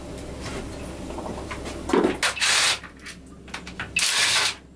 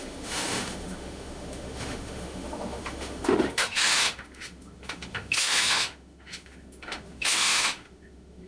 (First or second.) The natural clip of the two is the first